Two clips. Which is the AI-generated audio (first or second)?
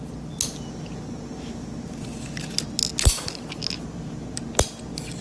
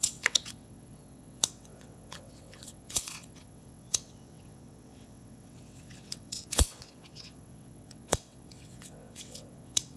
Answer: second